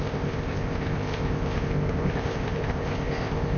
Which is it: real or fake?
fake